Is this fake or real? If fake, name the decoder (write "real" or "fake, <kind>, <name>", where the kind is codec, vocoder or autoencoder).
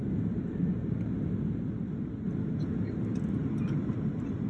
real